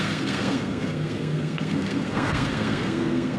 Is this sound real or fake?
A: fake